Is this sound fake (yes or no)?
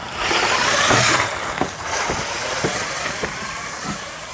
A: no